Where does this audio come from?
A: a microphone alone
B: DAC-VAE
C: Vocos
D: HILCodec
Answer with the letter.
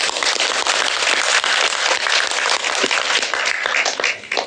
A